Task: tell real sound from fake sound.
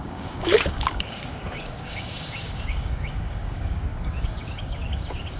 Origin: fake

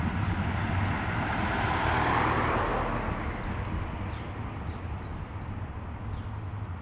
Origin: real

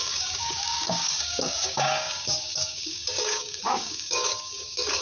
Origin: fake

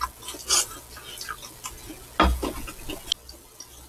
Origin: real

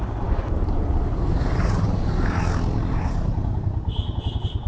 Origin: real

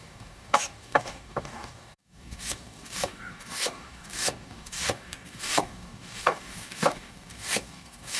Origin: fake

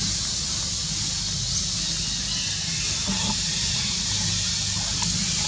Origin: real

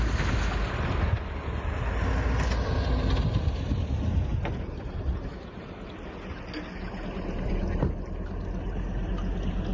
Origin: real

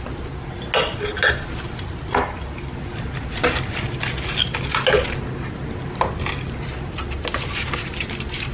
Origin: real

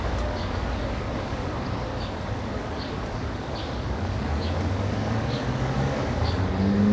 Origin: fake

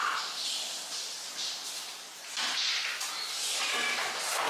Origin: real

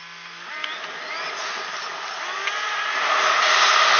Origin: real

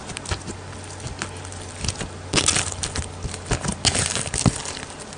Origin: real